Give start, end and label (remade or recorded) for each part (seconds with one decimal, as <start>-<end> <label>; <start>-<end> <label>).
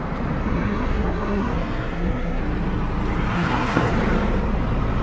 0.0-0.4 recorded; 0.4-2.4 remade; 2.4-3.3 recorded; 3.3-3.9 remade; 3.9-5.0 recorded